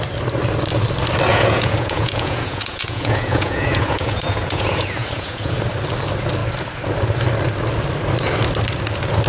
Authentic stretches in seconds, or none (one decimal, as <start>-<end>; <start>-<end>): 0.0-1.3; 5.6-9.3